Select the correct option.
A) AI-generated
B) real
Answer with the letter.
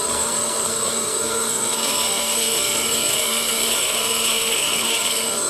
A